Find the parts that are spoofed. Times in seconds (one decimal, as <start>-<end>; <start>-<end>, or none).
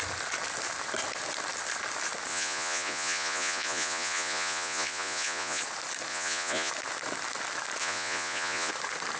2.3-5.6; 6.1-6.7; 7.8-8.7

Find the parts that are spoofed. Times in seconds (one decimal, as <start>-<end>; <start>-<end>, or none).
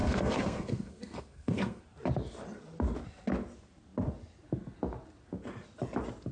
0.0-1.8